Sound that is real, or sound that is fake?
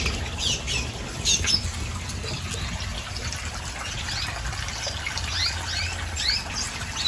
real